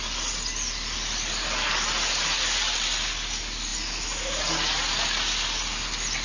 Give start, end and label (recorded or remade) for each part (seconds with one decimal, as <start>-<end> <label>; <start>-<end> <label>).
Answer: 0.0-6.2 recorded